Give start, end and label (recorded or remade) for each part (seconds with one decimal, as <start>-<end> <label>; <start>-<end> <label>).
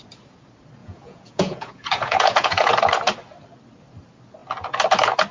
0.0-0.8 recorded; 0.8-2.7 remade; 2.7-5.3 recorded